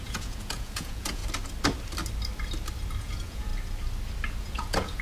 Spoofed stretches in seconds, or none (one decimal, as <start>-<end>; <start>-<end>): 0.0-1.2; 3.0-3.5; 4.4-5.0